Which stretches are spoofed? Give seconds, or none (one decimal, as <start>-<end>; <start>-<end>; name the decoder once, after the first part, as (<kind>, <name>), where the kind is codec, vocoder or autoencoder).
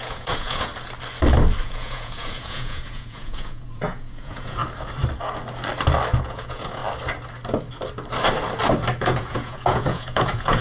0.0-0.7 (vocoder, Vocos); 1.6-4.6; 6.2-6.8; 9.0-10.6